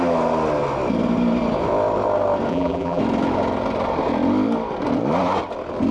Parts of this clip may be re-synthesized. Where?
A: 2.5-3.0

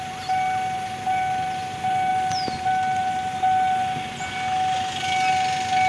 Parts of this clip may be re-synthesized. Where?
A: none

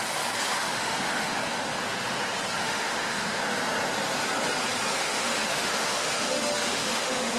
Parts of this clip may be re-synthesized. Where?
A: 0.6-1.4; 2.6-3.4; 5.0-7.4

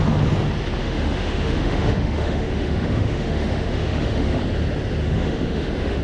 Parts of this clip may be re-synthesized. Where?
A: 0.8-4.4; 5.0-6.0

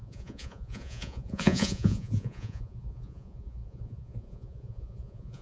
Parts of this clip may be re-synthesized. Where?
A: 0.0-5.4

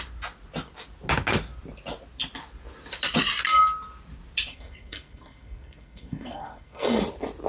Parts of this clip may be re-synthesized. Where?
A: 4.5-7.0

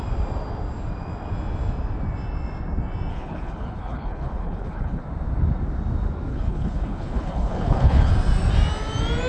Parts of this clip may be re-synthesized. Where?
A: 3.1-5.0; 6.3-8.1